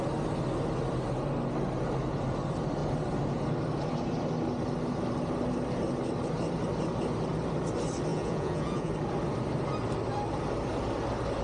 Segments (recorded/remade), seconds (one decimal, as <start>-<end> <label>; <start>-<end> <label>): 0.0-8.1 recorded; 8.1-8.9 remade; 8.9-11.4 recorded